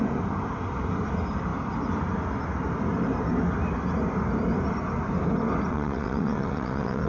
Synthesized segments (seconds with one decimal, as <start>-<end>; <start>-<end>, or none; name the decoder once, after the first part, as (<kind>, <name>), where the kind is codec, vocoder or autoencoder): 5.7-7.1 (vocoder, WaveNeXt)